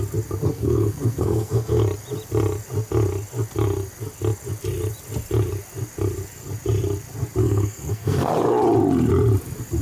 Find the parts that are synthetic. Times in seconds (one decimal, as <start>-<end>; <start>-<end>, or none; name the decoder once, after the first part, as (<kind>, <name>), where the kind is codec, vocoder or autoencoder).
0.5-1.8 (codec, SNAC); 7.4-8.3